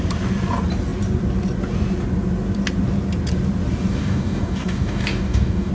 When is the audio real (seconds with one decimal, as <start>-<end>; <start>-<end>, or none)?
0.0-3.9